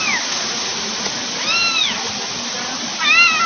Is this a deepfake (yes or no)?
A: no